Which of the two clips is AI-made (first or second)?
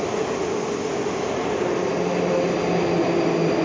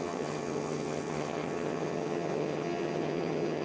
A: second